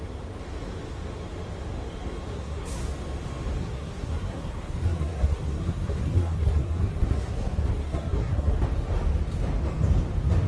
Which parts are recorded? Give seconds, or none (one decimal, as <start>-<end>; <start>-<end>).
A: 0.0-2.3; 2.8-3.6; 8.6-10.5